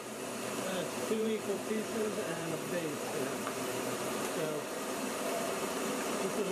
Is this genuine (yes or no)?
no